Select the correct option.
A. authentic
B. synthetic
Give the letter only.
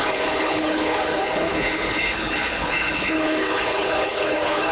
B